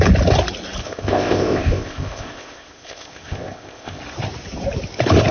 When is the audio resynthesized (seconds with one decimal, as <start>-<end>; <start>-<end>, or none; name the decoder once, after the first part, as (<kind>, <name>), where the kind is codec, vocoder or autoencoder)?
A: 0.8-4.0 (codec, ZipCodec)